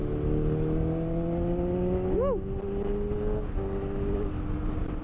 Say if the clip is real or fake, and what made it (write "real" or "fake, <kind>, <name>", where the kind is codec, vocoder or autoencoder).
real